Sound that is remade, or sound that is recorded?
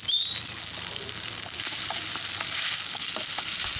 recorded